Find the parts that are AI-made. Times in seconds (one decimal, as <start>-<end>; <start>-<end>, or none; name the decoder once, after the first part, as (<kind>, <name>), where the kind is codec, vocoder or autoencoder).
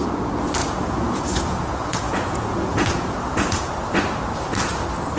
0.6-3.7 (vocoder, Vocos)